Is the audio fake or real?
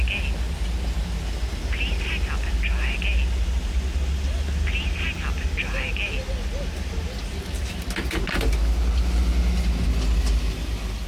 real